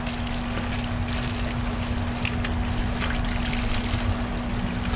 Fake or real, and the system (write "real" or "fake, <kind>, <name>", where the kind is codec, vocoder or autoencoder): real